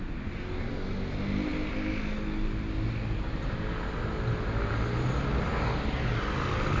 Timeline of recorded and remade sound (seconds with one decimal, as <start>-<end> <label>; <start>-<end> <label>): 0.0-6.8 recorded